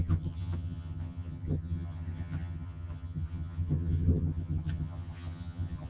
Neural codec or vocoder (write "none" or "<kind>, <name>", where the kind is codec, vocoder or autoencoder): vocoder, HiFi-GAN